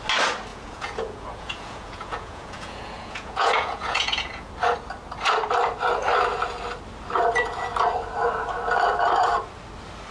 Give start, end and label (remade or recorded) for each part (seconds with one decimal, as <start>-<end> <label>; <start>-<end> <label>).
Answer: 0.0-0.5 recorded; 0.5-4.5 remade; 4.5-10.1 recorded